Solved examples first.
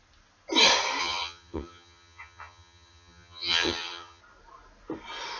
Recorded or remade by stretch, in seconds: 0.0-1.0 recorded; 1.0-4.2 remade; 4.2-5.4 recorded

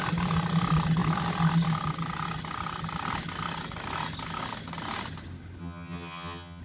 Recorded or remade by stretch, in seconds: 0.0-5.6 recorded; 5.6-6.6 remade